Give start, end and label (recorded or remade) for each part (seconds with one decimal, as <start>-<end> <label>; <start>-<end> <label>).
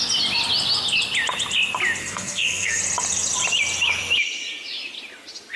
0.0-2.0 recorded; 2.0-2.8 remade; 2.8-5.6 recorded